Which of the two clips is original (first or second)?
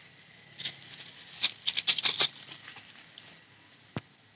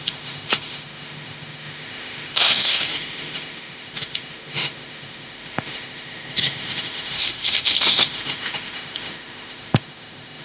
first